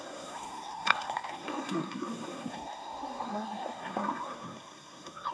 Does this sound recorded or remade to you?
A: remade